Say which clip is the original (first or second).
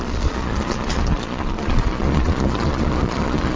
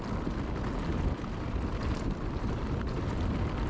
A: second